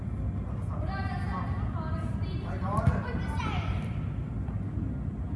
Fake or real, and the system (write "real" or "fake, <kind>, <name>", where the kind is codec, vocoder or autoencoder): real